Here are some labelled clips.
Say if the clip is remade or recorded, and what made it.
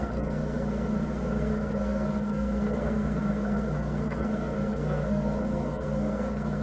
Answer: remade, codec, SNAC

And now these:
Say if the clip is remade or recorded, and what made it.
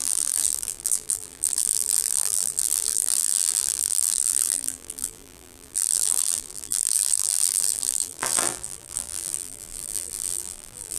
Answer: remade, vocoder, BigVGAN v2